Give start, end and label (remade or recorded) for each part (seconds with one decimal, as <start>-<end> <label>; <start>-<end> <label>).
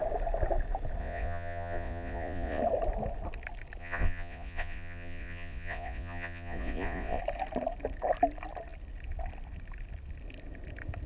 0.0-1.0 recorded; 1.0-2.6 remade; 2.6-3.8 recorded; 3.8-7.2 remade; 7.2-11.1 recorded